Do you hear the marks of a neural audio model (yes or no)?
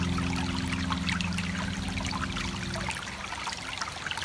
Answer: no